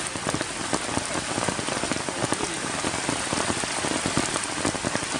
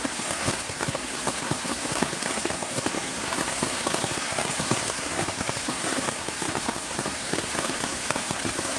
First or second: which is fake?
second